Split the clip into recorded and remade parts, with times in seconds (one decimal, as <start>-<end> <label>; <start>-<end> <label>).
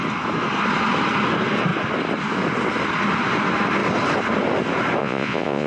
0.0-5.0 recorded; 5.0-5.7 remade